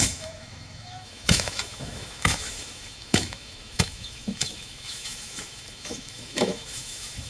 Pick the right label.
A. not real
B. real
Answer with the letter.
A